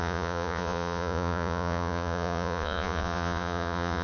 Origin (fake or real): fake